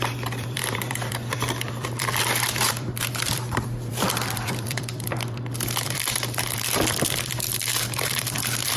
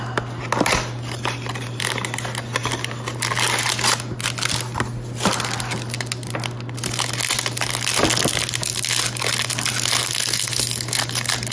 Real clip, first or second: second